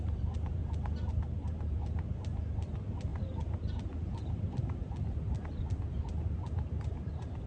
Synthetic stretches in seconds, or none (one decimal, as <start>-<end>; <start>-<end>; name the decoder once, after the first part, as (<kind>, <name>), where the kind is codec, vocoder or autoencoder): 0.0-0.6 (vocoder, BigVGAN v2); 1.1-7.5

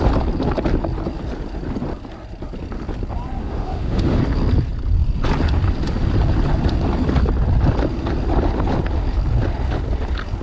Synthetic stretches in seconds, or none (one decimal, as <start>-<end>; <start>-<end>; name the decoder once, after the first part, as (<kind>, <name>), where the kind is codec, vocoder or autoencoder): 3.4-4.2 (autoencoder, DAC-VAE)

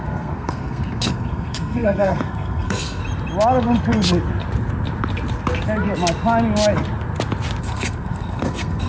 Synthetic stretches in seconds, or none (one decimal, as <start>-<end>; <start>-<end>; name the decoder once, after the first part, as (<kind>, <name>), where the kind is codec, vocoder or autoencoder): 0.0-3.0 (codec, SNAC); 7.6-8.9